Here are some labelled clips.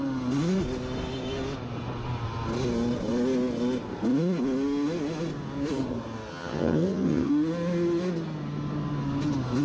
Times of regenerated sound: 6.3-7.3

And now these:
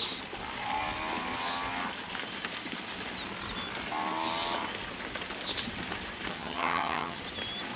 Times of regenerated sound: 6.3-7.2

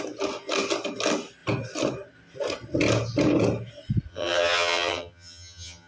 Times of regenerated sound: 4.1-5.9

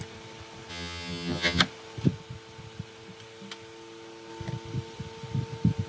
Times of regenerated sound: 0.7-1.6

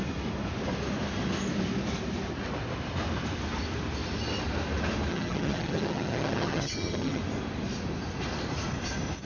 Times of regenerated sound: 5.1-7.2

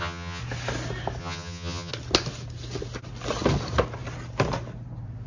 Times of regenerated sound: 0.0-0.4; 1.2-1.9

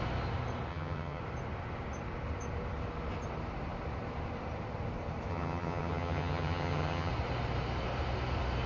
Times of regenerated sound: 0.7-1.2; 5.3-7.1

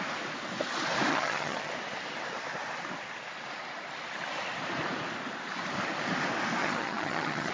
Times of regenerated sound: 1.1-1.7; 6.6-7.5